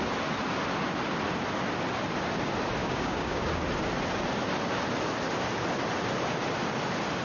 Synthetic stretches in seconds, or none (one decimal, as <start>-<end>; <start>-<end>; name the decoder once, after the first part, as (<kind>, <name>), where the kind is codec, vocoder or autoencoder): 2.8-3.6 (codec, DAC)

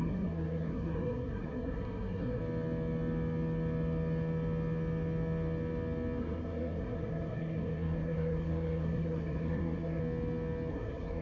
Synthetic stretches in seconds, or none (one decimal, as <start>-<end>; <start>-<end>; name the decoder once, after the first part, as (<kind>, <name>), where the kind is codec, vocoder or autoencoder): 0.0-2.4 (codec, SNAC); 6.2-10.0; 10.7-11.2

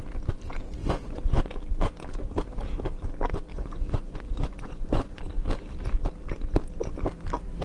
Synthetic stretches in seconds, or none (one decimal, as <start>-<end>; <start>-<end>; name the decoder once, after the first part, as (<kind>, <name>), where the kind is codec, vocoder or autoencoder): 0.8-1.4 (vocoder, Vocos); 3.5-5.2

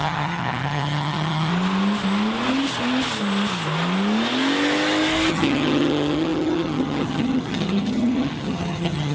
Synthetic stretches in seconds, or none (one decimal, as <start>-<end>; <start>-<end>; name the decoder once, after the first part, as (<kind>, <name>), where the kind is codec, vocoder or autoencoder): 0.0-1.5 (vocoder, HiFi-GAN); 5.3-9.1

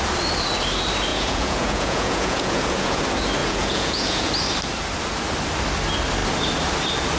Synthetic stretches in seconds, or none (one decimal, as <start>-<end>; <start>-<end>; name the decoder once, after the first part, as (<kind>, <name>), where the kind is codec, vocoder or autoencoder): 1.1-3.0 (vocoder, Vocos); 3.4-4.3